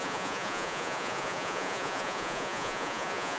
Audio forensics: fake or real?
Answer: fake